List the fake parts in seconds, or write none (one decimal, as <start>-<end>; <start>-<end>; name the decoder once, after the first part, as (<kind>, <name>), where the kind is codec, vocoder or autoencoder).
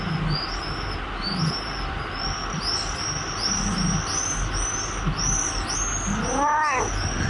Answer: none